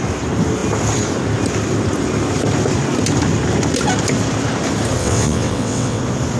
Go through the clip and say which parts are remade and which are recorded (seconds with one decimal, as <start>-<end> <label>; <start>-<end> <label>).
0.0-5.0 recorded; 5.0-6.0 remade; 6.0-6.4 recorded